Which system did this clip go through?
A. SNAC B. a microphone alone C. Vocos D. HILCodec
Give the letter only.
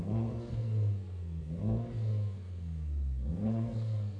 A